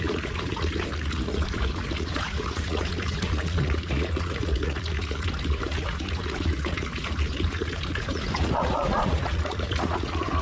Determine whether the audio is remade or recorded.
remade